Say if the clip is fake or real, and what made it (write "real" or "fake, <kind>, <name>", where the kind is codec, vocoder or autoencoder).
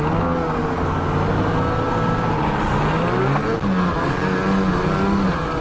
real